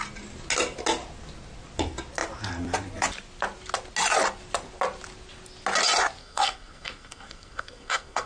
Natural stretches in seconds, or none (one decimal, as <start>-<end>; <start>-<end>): 0.0-6.2